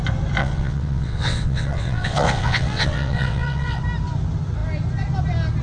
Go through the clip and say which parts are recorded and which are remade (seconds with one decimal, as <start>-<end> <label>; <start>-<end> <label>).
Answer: 0.0-0.4 recorded; 0.4-3.8 remade; 3.8-5.6 recorded